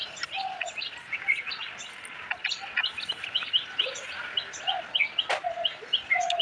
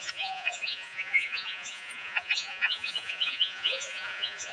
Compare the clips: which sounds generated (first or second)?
second